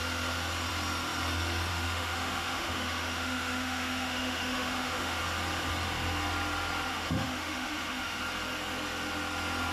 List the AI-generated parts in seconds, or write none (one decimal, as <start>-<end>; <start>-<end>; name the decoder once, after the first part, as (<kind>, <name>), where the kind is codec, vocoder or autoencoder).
1.7-5.2 (autoencoder, DAC-VAE); 6.9-8.2